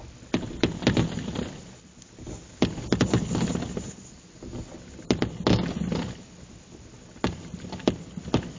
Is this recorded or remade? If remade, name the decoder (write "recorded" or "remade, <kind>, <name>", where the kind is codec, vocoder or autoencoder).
recorded